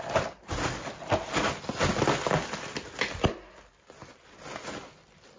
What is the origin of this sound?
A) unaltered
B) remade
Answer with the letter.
A